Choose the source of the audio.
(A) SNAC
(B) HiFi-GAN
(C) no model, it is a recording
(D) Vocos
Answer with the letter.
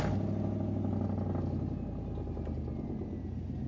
C